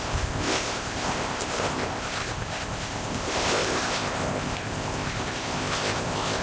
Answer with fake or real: fake